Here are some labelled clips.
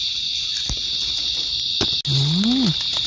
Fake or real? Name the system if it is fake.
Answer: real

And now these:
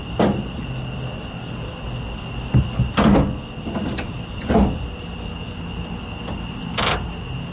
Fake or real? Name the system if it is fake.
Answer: real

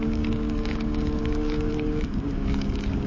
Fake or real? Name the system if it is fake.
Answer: fake, codec, DAC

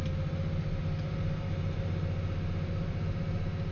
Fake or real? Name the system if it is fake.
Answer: real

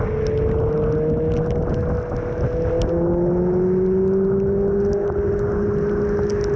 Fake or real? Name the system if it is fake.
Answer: real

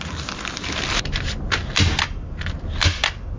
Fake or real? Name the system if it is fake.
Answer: real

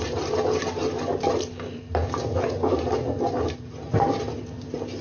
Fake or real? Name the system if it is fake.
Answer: real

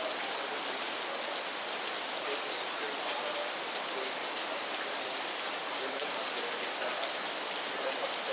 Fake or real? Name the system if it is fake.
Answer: fake, vocoder, BigVGAN v2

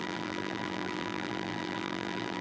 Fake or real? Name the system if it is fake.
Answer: fake, vocoder, BigVGAN v2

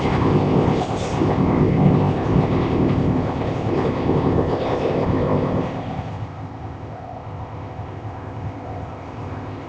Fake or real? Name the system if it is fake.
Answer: fake, codec, ZipCodec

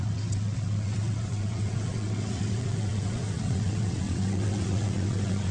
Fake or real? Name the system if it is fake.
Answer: fake, vocoder, WaveNeXt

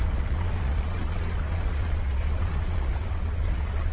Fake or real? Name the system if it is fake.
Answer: fake, vocoder, Vocos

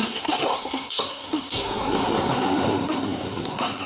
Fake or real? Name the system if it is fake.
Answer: fake, codec, SNAC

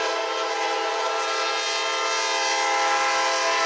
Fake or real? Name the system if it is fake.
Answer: real